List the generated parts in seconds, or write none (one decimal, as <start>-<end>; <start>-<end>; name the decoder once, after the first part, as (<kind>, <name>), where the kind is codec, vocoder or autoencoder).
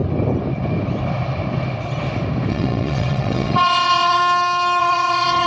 2.5-4.2 (vocoder, WaveNeXt); 4.8-5.5